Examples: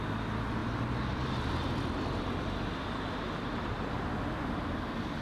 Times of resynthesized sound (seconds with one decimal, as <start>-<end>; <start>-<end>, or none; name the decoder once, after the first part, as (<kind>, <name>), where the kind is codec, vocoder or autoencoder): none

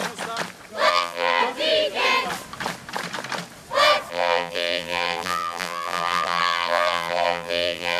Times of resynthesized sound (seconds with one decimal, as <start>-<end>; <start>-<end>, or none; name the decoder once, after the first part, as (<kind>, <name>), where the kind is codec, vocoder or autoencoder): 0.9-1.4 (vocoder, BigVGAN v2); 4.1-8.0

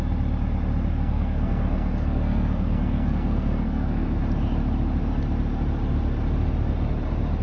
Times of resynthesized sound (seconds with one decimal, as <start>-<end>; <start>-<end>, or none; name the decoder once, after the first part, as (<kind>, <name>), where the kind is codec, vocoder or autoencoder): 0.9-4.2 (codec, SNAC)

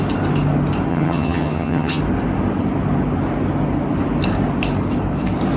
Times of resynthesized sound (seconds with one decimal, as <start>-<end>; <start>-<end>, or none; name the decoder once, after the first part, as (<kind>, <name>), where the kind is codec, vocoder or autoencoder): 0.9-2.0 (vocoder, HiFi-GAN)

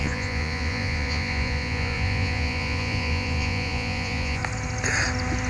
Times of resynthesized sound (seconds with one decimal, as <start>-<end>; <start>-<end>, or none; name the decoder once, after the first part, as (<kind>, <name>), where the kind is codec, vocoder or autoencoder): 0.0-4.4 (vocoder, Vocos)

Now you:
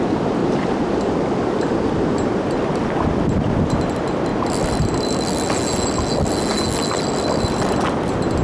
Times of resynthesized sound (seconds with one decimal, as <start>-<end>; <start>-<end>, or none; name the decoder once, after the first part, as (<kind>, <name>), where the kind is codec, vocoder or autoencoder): 0.4-1.0 (vocoder, BigVGAN v2)